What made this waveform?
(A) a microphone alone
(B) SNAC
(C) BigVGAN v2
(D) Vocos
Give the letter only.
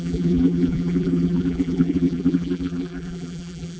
C